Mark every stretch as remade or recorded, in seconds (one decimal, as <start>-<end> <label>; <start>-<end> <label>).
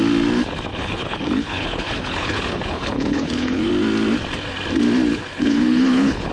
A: 0.0-0.7 recorded; 0.7-3.7 remade; 3.7-5.1 recorded; 5.1-6.3 remade